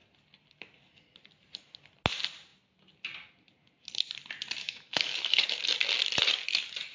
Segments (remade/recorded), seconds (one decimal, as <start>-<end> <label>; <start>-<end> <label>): 0.0-4.6 recorded; 4.6-5.6 remade; 5.6-6.9 recorded